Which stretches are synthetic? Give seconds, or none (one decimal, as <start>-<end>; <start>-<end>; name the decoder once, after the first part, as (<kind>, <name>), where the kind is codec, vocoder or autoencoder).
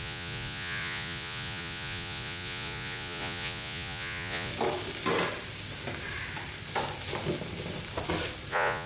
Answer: 0.0-4.5 (vocoder, Vocos); 8.5-8.9